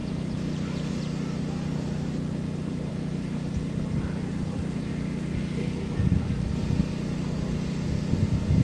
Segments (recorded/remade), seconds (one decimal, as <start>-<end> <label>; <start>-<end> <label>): 0.0-8.6 recorded